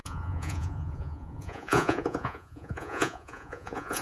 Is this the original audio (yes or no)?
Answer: no